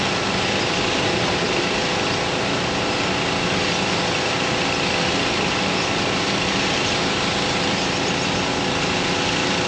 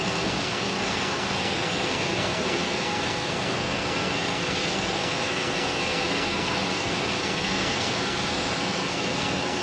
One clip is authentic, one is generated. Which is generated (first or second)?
second